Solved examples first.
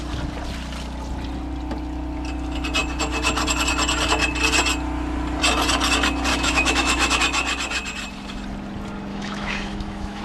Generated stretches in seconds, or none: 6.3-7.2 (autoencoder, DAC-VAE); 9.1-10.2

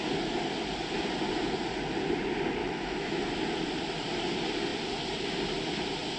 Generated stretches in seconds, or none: 2.6-3.2 (autoencoder, DAC-VAE)

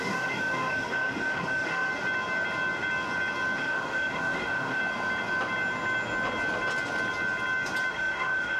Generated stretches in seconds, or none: 0.0-1.9 (autoencoder, DAC-VAE); 3.6-4.8; 7.9-8.6

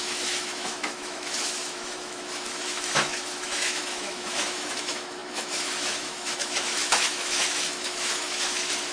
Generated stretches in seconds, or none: 0.0-8.9 (autoencoder, DAC-VAE)

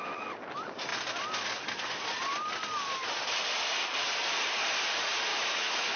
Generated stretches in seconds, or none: 5.3-6.0 (autoencoder, DAC-VAE)

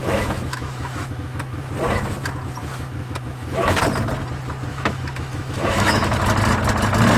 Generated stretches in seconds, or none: 0.0-1.7 (autoencoder, DAC-VAE); 2.6-3.8; 4.7-6.2